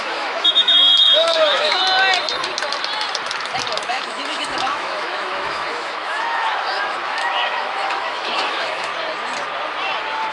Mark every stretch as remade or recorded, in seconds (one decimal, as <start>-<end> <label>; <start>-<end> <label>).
0.0-1.8 remade; 1.8-3.9 recorded; 3.9-8.9 remade; 8.9-10.3 recorded